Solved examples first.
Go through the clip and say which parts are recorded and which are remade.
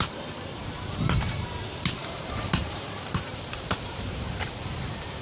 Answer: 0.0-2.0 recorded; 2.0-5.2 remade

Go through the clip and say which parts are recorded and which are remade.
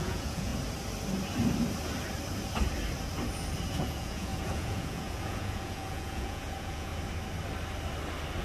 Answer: 0.0-0.5 remade; 0.5-3.7 recorded; 3.7-6.9 remade; 6.9-8.4 recorded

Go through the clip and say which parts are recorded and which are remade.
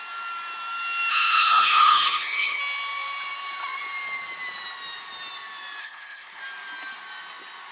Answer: 0.0-1.1 recorded; 1.1-2.6 remade; 2.6-5.8 recorded; 5.8-6.4 remade; 6.4-7.7 recorded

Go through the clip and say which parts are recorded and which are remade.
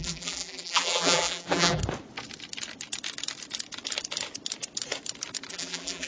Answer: 0.0-1.8 remade; 1.8-5.5 recorded; 5.5-6.1 remade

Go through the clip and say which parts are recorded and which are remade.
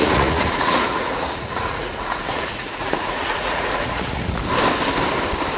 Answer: 0.0-4.4 remade; 4.4-5.6 recorded